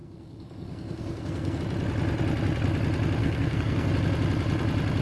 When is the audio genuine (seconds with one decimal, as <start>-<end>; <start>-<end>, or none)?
1.6-3.2; 3.9-5.0